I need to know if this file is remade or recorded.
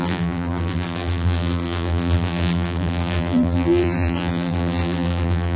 remade